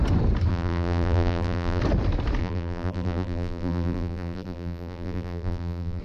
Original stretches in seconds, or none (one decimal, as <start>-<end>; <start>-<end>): 0.0-0.5; 1.8-2.4